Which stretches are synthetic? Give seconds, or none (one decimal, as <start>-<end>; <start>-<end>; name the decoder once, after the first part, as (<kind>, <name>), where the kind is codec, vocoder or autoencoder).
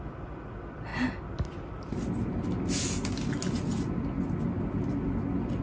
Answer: none